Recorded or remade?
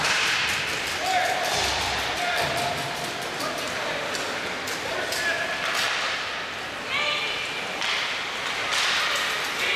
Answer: recorded